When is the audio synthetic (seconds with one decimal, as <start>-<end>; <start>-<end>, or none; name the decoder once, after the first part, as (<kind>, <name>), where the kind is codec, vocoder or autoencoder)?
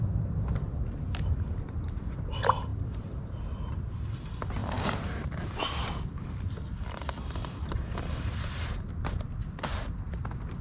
4.6-5.4 (vocoder, BigVGAN v2); 7.4-8.9